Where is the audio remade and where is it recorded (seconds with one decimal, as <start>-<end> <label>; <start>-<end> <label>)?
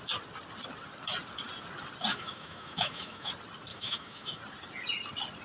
0.0-2.1 recorded; 2.1-3.3 remade; 3.3-3.7 recorded; 3.7-4.4 remade; 4.4-5.4 recorded